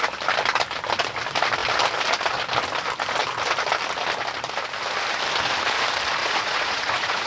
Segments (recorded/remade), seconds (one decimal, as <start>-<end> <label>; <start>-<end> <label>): 0.0-6.2 recorded; 6.2-7.3 remade